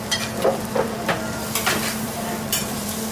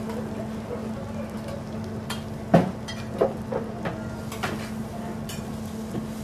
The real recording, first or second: second